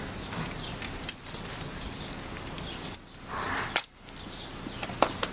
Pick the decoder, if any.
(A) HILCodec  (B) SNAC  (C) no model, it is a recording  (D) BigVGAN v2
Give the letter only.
D